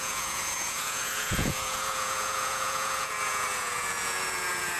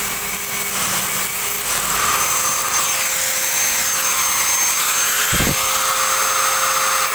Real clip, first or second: second